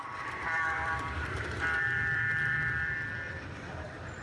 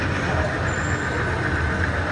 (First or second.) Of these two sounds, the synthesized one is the first